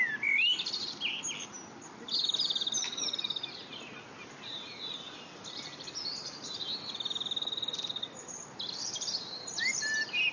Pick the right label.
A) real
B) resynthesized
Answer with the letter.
A